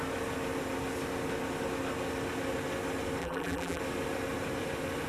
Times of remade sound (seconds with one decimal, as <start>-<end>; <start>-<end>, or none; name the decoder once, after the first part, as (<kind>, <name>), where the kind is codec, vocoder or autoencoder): 3.2-3.8 (vocoder, BigVGAN v2)